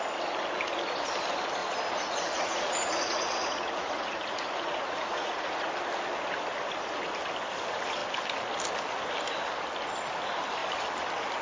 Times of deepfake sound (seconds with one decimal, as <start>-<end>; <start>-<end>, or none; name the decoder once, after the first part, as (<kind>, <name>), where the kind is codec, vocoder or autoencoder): 1.6-5.7 (vocoder, Vocos)